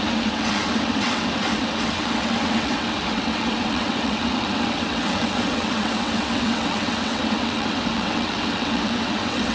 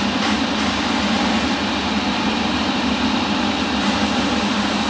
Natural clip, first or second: second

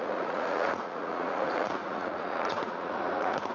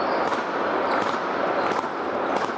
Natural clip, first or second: second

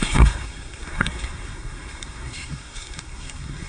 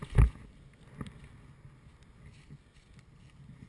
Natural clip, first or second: second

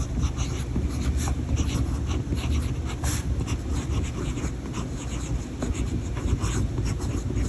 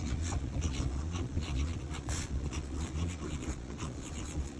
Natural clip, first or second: first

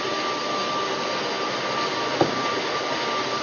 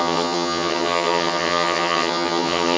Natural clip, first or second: first